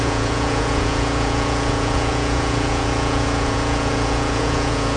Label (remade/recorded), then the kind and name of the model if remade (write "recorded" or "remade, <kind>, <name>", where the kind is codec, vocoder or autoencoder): remade, vocoder, Vocos